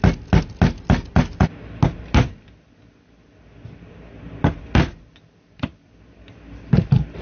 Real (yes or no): yes